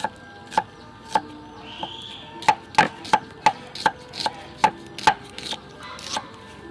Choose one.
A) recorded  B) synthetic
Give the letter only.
A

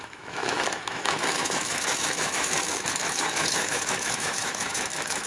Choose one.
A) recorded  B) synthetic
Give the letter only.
B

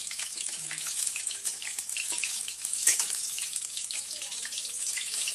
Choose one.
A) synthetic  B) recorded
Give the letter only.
A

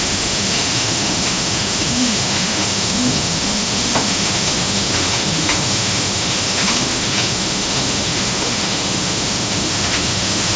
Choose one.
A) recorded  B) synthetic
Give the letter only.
B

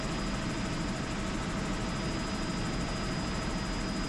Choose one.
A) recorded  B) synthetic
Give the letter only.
A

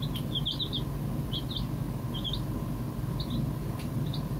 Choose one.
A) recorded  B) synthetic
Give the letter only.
A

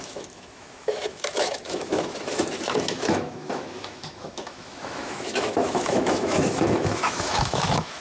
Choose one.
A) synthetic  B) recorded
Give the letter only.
A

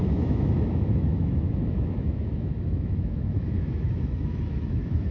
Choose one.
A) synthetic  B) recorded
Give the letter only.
A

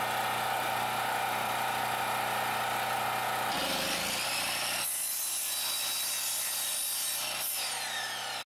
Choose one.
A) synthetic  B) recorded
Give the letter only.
B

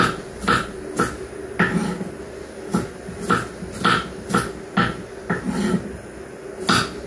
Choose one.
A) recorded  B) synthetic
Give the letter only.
A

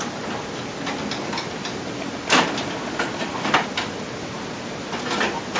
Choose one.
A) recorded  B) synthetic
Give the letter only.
A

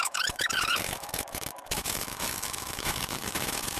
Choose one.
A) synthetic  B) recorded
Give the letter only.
A